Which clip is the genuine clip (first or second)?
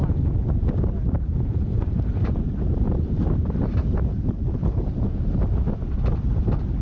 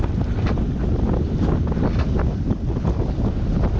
second